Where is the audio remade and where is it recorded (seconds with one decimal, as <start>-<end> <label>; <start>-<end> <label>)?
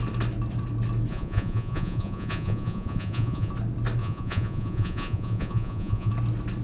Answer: 0.0-1.1 recorded; 1.1-3.5 remade; 3.5-4.0 recorded; 4.0-6.1 remade; 6.1-6.6 recorded